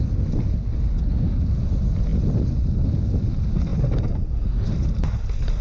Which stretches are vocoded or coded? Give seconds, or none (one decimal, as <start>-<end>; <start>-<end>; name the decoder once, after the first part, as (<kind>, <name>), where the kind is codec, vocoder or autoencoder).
none